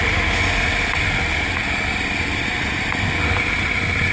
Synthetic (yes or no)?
no